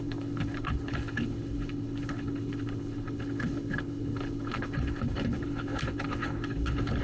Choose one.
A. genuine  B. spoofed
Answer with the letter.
B